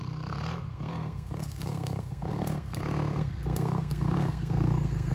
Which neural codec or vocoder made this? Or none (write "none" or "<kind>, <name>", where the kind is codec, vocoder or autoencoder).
codec, SNAC